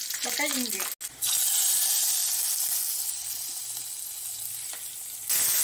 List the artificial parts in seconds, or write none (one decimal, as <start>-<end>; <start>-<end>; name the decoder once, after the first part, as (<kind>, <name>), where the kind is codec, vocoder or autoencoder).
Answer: none